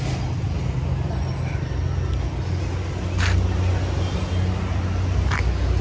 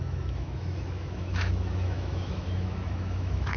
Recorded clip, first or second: first